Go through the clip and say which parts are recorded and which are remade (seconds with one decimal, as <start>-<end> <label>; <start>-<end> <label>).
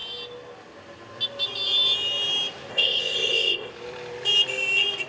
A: 0.0-2.7 recorded; 2.7-3.7 remade; 3.7-5.1 recorded